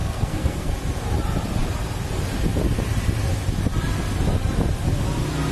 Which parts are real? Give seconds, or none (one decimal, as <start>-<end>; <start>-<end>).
0.7-5.5